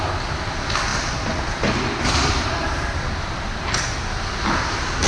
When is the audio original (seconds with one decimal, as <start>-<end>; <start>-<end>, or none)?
0.0-0.9; 3.7-5.1